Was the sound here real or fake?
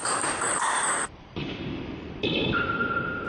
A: fake